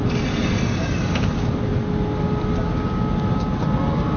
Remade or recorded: recorded